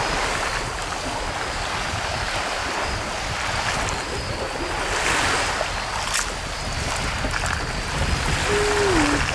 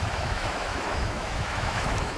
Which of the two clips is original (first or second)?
first